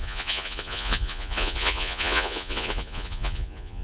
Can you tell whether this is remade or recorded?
remade